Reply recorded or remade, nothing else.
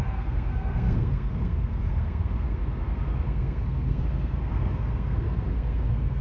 remade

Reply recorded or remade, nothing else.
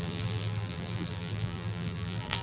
remade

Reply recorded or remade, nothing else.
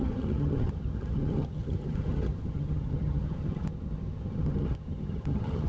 remade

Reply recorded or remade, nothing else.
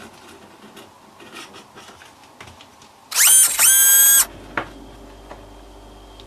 recorded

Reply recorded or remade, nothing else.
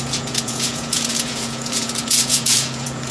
remade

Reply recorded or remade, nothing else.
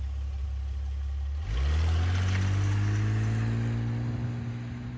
recorded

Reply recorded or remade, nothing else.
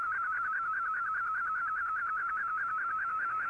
remade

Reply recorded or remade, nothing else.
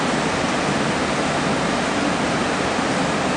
recorded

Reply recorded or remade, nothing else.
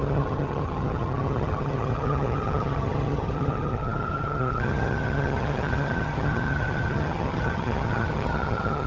remade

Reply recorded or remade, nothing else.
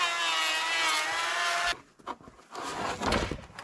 recorded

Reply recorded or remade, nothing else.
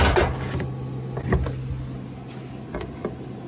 recorded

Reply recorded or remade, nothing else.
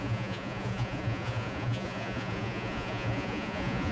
remade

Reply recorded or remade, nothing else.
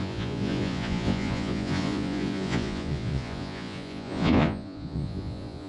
remade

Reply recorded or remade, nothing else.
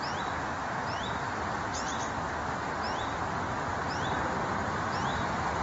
recorded